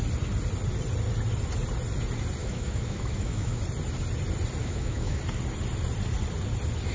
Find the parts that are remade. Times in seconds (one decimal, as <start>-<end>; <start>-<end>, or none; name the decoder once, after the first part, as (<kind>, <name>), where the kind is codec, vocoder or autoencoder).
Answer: 2.4-3.6 (autoencoder, DAC-VAE); 4.6-5.2